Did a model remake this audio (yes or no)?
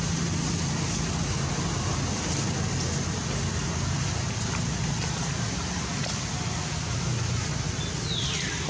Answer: no